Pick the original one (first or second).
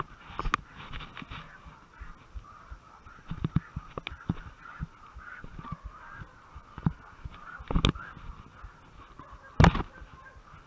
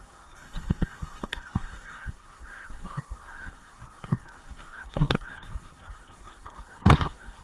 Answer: first